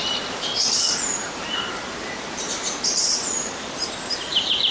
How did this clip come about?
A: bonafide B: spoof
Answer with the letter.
B